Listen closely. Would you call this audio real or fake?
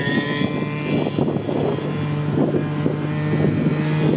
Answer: real